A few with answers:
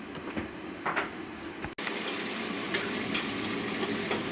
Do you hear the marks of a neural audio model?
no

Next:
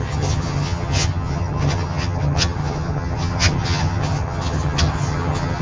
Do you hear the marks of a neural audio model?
yes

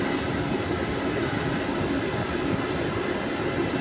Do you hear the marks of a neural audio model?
no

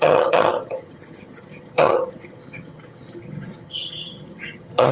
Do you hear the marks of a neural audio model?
yes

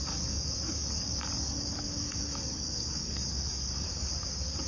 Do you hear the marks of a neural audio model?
yes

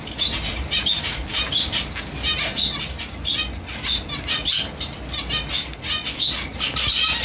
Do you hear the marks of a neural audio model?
no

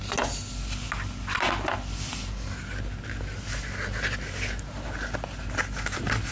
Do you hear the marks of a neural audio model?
no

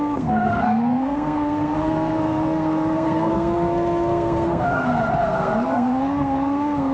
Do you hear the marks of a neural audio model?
yes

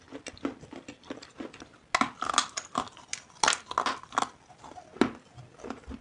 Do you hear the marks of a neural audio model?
no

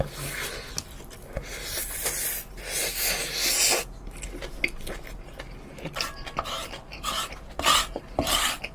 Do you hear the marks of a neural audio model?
no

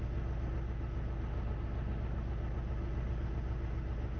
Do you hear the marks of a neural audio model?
no